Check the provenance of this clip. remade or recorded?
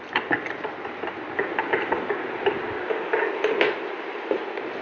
recorded